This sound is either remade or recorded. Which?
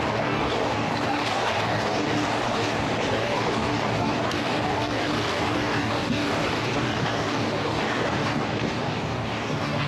remade